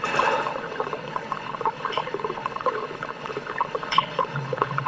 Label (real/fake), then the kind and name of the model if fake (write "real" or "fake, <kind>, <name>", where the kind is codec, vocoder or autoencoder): fake, codec, HILCodec